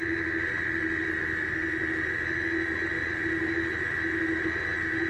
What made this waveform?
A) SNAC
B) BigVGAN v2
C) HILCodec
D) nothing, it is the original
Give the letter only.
D